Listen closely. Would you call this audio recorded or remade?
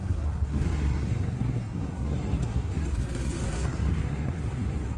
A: remade